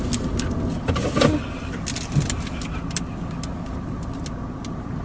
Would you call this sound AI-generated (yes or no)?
no